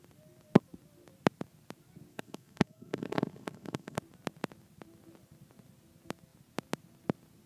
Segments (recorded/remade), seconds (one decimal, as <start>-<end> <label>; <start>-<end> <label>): 0.0-2.1 recorded; 2.1-4.0 remade; 4.0-7.5 recorded